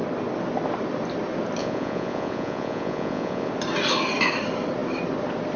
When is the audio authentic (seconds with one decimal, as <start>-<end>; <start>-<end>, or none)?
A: 0.0-1.6; 3.5-5.6